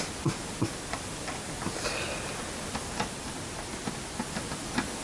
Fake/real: real